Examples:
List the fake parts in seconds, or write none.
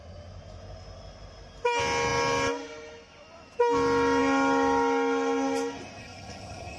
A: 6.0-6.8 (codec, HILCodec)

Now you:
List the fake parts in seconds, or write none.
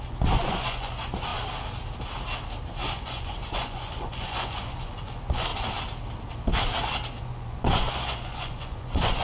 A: 0.0-1.3 (vocoder, Vocos); 2.7-5.5; 7.2-9.2